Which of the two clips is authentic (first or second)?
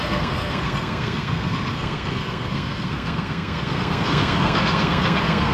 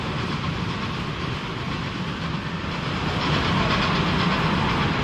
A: second